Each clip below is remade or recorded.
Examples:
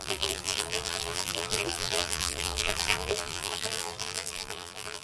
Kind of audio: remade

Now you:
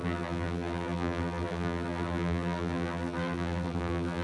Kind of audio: remade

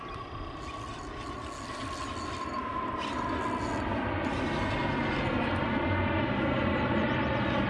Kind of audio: recorded